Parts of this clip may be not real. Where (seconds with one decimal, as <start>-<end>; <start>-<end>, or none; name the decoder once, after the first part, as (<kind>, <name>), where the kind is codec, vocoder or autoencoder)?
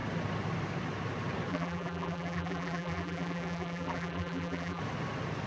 1.5-4.8 (vocoder, BigVGAN v2)